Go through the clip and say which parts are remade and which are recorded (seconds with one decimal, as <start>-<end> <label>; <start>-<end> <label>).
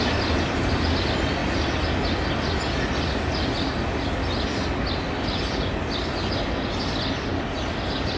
0.0-8.2 recorded